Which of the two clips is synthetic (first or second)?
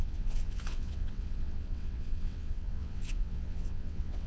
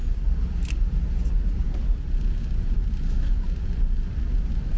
first